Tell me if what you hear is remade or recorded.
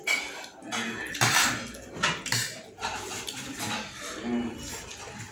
recorded